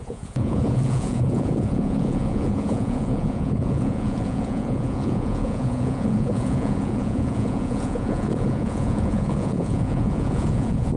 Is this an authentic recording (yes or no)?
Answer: no